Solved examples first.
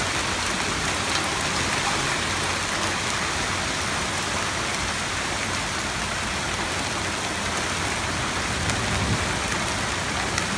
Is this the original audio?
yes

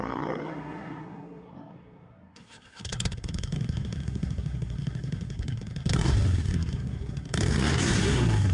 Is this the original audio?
no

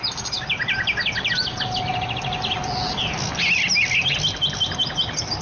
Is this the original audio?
yes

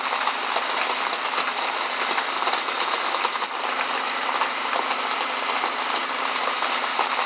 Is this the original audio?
yes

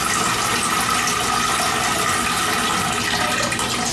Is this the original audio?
yes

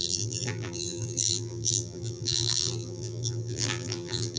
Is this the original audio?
no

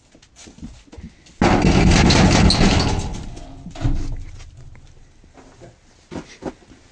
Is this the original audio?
yes